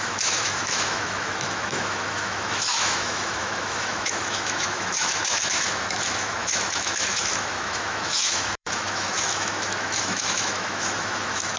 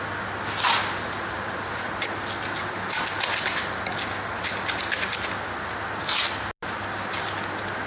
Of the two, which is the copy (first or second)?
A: first